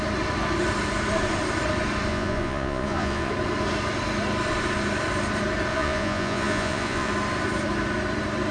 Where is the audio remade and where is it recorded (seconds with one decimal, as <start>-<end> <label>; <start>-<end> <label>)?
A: 0.0-2.1 recorded; 2.1-3.3 remade; 3.3-5.7 recorded; 5.7-7.1 remade; 7.1-8.5 recorded